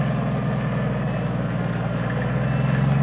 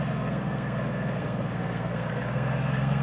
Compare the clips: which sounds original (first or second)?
first